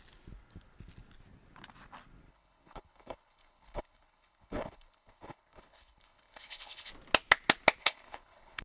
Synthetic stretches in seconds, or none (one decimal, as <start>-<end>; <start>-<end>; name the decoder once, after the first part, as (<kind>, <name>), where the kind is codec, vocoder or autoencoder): 2.3-6.9 (codec, HILCodec); 7.8-8.6